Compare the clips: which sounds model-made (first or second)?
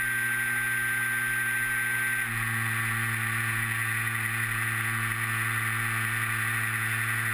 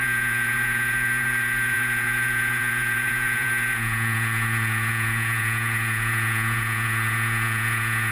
second